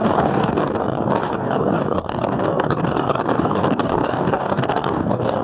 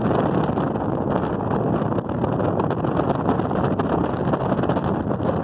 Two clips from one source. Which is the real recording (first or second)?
second